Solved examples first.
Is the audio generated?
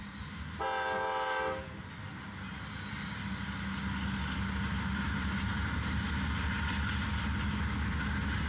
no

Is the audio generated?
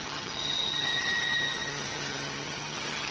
yes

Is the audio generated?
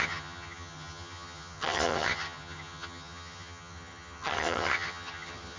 yes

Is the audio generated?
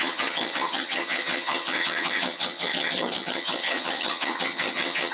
yes